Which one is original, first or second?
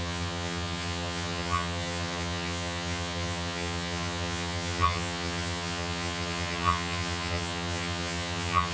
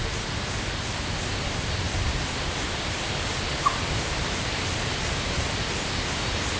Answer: second